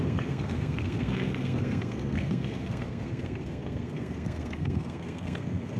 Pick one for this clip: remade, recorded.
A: remade